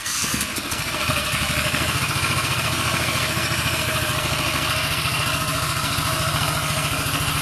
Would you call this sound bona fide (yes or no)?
no